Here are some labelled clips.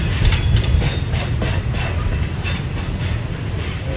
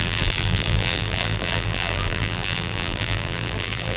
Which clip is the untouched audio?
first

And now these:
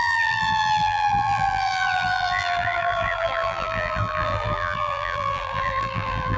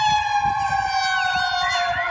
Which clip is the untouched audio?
second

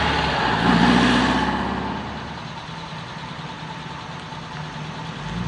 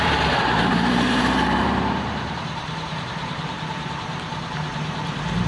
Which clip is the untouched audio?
first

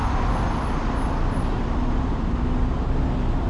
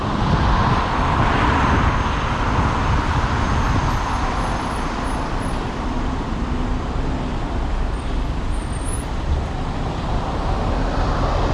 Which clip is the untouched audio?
first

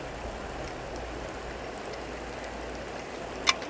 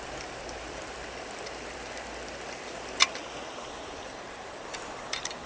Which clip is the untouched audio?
first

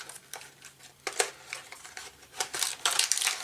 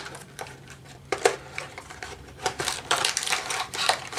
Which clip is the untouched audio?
first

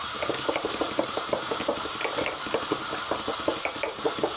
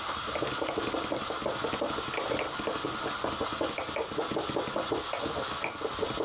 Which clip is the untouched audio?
second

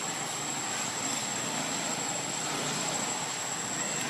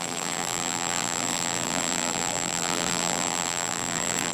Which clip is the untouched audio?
first